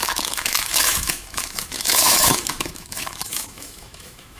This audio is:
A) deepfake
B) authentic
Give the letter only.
A